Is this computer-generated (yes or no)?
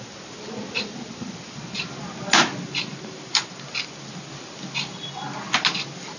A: no